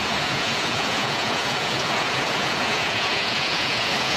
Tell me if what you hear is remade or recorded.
remade